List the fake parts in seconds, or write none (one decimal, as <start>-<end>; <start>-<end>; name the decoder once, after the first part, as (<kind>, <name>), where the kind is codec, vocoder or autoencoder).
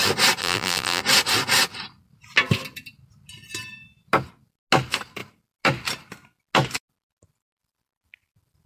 0.4-1.0 (vocoder, BigVGAN v2)